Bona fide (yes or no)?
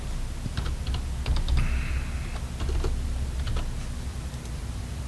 yes